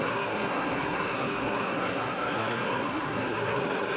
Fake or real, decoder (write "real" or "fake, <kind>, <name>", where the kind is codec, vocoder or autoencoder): fake, codec, SNAC